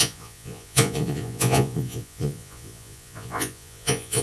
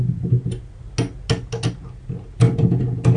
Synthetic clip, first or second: first